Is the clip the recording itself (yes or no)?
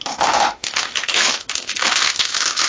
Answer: no